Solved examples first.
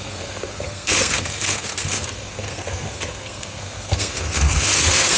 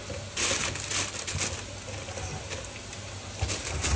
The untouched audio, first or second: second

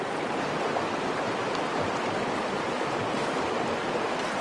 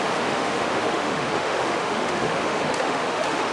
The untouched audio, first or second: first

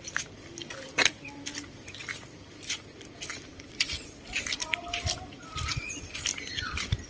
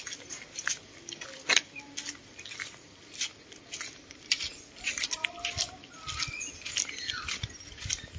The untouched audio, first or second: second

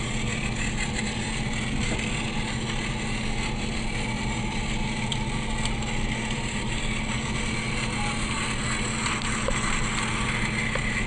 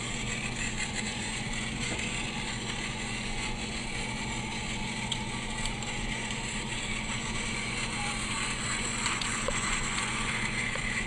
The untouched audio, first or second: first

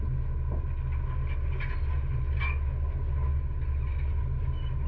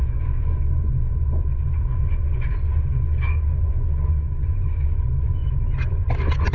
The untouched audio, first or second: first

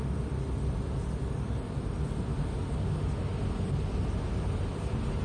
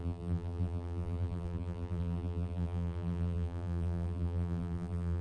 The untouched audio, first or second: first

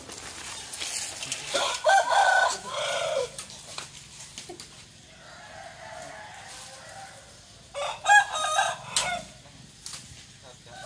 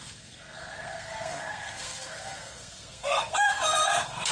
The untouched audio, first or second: first